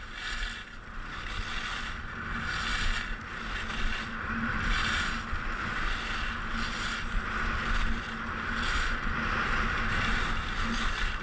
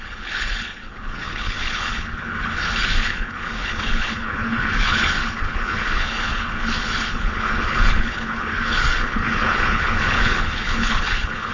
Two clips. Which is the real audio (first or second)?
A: first